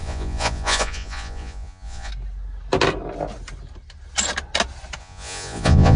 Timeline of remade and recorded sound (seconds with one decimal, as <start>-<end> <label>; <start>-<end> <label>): 0.0-2.1 remade; 2.1-5.0 recorded; 5.0-6.0 remade